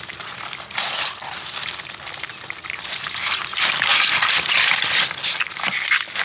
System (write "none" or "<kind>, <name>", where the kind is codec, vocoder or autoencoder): none